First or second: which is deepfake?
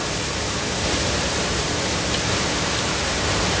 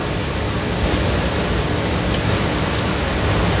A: first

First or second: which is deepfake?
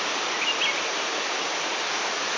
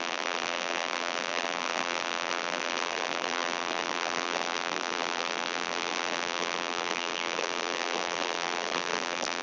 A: second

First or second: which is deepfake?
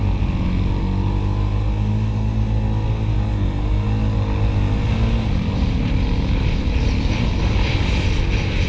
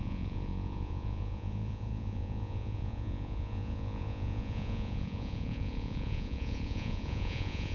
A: second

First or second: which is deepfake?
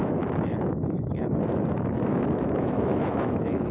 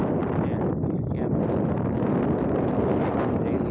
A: first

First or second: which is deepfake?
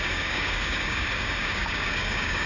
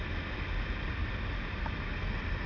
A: first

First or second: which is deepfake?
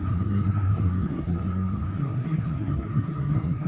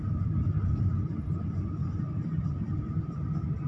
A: first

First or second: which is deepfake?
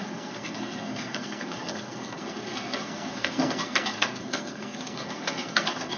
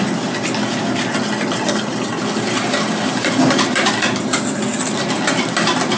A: first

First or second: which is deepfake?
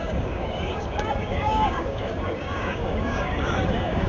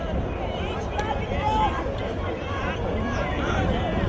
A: first